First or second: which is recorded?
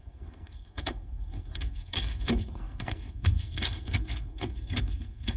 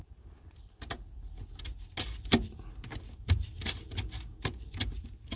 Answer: second